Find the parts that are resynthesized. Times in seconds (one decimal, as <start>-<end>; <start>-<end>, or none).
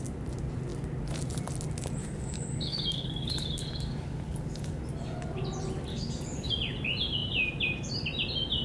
2.0-4.8; 5.9-6.5